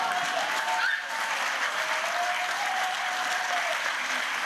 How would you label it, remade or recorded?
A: remade